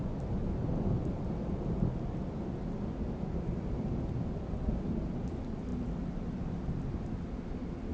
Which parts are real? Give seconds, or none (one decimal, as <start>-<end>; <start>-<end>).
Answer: 0.0-7.9